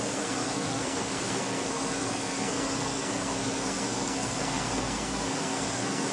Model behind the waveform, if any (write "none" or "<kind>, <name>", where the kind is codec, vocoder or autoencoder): codec, SNAC